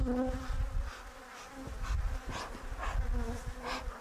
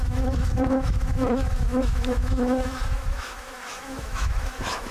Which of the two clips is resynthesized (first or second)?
second